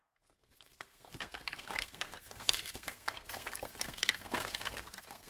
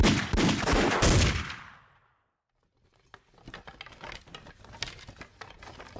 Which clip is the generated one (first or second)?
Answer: first